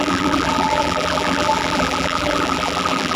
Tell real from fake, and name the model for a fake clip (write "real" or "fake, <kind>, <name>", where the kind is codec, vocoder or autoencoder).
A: fake, vocoder, BigVGAN v2